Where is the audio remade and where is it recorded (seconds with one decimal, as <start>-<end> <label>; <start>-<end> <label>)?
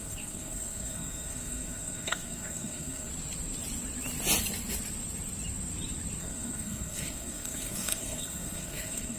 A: 0.0-3.1 remade; 3.1-6.2 recorded; 6.2-9.2 remade